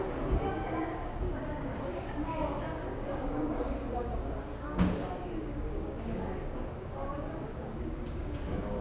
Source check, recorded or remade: remade